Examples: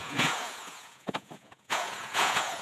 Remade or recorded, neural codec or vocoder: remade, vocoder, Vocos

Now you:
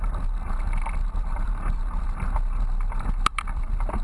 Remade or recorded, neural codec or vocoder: remade, vocoder, BigVGAN v2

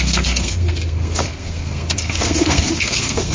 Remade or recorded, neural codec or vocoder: remade, codec, SNAC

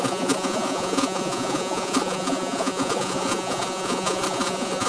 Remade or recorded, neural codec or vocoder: remade, vocoder, Vocos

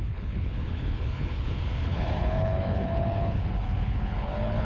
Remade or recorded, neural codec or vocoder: remade, codec, HILCodec